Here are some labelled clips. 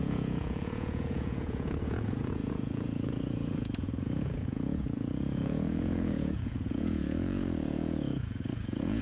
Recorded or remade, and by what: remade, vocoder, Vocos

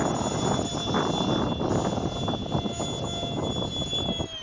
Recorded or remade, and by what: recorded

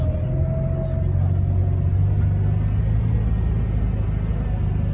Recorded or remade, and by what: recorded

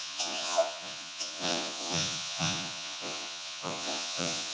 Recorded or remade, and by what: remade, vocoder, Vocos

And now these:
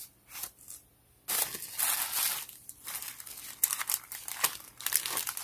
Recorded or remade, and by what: recorded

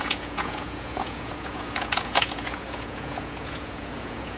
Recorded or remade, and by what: remade, vocoder, Vocos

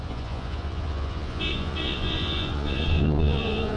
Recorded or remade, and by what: remade, vocoder, Vocos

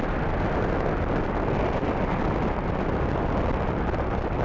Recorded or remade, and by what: recorded